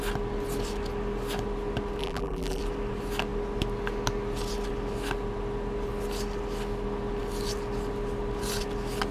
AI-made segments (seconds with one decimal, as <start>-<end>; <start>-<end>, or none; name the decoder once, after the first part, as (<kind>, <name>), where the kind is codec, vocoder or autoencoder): 2.0-2.6 (vocoder, BigVGAN v2)